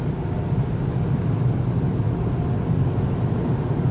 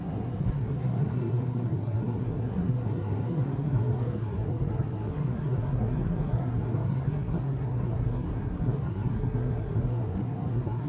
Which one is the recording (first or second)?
first